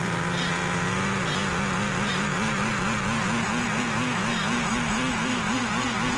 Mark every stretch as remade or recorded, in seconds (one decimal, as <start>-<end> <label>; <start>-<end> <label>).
0.0-6.2 recorded